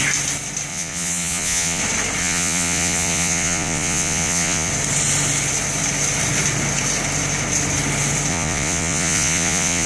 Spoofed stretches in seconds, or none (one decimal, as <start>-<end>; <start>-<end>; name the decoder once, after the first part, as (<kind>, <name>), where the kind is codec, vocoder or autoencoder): 0.7-1.8 (vocoder, Vocos); 2.2-4.7; 8.3-9.9